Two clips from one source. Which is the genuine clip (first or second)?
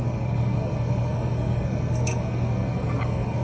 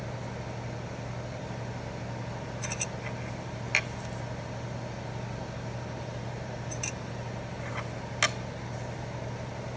second